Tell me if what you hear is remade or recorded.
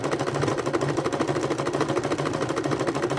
recorded